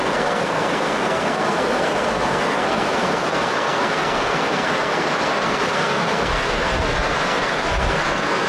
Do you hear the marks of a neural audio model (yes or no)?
yes